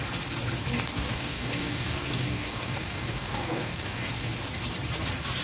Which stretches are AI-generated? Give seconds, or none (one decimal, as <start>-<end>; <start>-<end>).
0.9-4.1